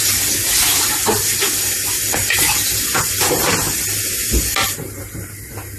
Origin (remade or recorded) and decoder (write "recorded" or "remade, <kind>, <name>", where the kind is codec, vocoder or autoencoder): recorded